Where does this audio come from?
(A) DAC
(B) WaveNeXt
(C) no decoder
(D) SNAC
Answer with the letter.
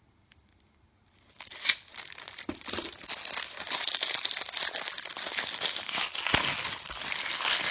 C